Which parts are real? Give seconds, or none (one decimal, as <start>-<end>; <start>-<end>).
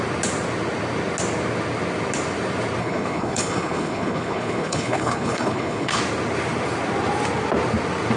0.0-2.8; 6.0-8.2